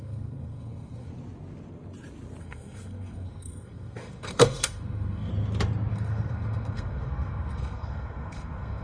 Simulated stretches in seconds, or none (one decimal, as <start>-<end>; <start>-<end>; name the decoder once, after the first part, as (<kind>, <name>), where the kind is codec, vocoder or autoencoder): 0.0-1.1 (codec, SNAC); 2.4-5.3; 5.9-8.8